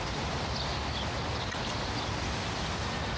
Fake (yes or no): no